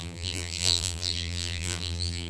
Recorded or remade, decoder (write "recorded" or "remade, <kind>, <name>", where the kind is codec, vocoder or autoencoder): remade, vocoder, BigVGAN v2